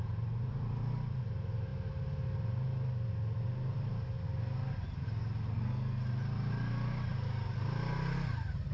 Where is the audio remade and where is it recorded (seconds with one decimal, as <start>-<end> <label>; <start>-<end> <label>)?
0.0-5.5 recorded; 5.5-6.0 remade; 6.0-8.7 recorded